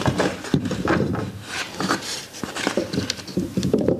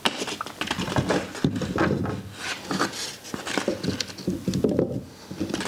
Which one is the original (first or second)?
second